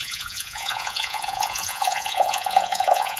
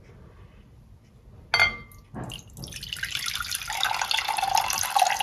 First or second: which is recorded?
second